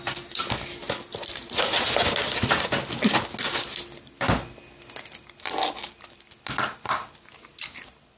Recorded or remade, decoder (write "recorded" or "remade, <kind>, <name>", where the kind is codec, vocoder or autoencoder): recorded